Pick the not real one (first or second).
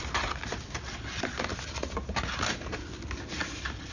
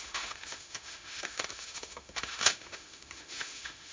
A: second